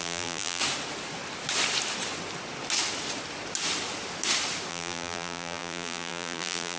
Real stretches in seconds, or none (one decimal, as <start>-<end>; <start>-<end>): 0.6-4.7